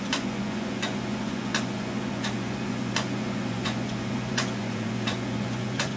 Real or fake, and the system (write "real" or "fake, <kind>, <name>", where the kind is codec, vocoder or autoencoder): fake, vocoder, Vocos